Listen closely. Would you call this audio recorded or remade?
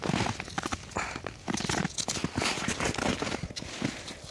recorded